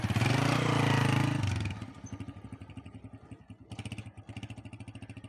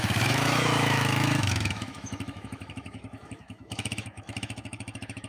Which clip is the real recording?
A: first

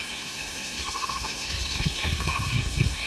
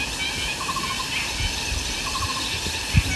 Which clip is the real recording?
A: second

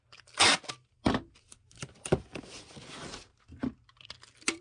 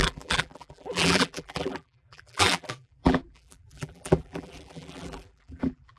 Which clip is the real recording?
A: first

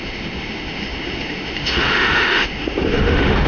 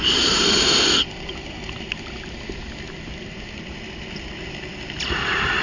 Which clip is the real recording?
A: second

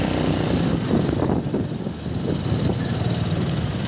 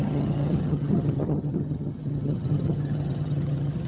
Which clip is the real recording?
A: first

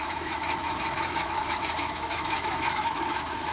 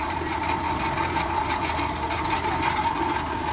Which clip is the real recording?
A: second